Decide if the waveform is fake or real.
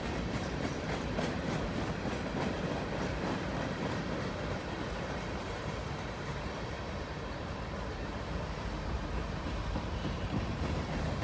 fake